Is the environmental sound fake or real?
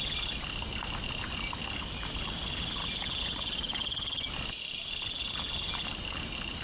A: real